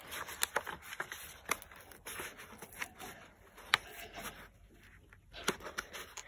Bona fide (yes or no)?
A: yes